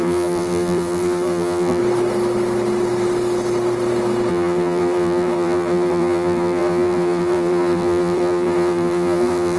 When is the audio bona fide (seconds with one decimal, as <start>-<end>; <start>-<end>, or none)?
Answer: 1.8-4.3